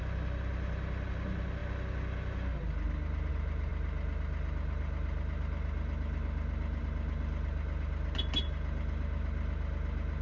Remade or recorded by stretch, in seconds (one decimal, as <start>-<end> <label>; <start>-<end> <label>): 0.0-10.2 recorded

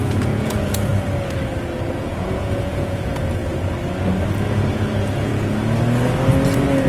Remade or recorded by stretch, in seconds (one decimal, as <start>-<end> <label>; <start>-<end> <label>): 0.0-0.9 remade; 0.9-2.0 recorded; 2.0-3.4 remade; 3.4-4.7 recorded; 4.7-5.3 remade; 5.3-6.9 recorded

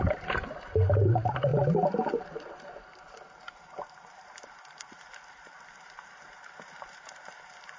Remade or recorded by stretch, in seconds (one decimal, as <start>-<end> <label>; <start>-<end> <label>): 0.0-7.8 remade

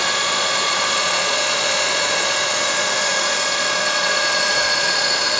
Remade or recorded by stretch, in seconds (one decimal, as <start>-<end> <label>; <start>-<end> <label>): 0.0-5.4 remade

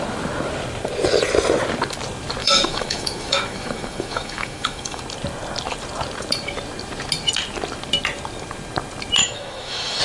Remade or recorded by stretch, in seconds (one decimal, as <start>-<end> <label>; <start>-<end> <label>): 0.0-2.4 recorded; 2.4-5.0 remade; 5.0-9.2 recorded; 9.2-10.0 remade